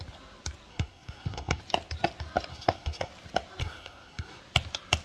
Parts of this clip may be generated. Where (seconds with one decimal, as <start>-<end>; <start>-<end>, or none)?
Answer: 0.7-1.6; 2.5-3.1; 3.6-4.4